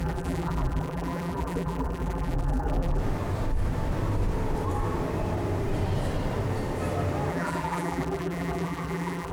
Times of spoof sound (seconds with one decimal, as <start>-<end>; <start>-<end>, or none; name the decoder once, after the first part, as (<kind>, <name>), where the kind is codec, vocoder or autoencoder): 0.0-3.0 (vocoder, BigVGAN v2); 7.3-9.3